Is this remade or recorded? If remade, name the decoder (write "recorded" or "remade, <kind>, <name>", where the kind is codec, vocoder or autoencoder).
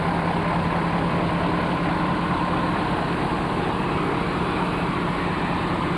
recorded